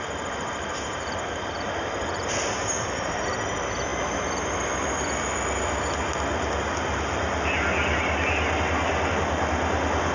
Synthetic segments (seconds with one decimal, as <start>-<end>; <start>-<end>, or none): 0.0-3.9; 9.1-10.1